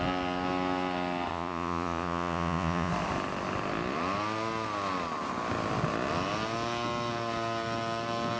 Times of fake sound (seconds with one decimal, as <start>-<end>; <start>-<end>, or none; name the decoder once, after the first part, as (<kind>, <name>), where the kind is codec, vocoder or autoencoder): 1.3-2.9 (vocoder, Vocos)